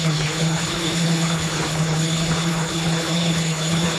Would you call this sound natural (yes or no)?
no